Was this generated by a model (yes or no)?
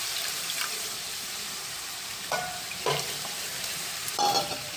yes